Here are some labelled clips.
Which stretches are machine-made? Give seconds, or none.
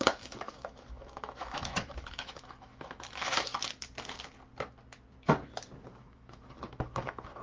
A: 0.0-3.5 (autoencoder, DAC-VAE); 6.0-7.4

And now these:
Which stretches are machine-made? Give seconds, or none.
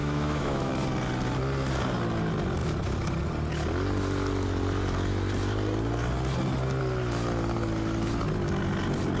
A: 0.0-0.7 (autoencoder, DAC-VAE)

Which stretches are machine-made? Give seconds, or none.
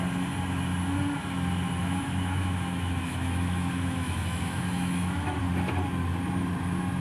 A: 1.8-5.4 (autoencoder, DAC-VAE)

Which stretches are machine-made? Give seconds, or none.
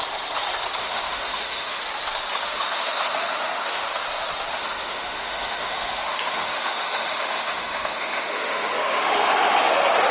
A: 0.8-1.8 (autoencoder, DAC-VAE); 2.4-3.9; 4.5-10.1